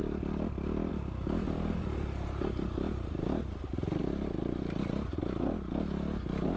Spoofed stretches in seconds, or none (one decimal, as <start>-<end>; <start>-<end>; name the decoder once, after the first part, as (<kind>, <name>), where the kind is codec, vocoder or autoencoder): none